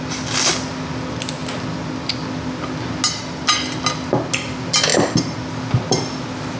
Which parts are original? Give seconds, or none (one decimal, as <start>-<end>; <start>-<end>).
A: 0.0-6.6